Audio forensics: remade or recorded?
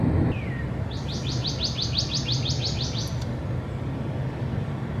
recorded